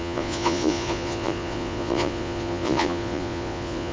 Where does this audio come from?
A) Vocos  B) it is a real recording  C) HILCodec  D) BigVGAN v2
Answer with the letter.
A